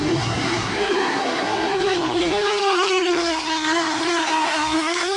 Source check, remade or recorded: remade